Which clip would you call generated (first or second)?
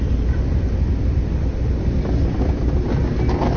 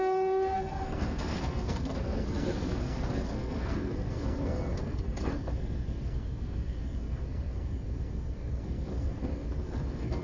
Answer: second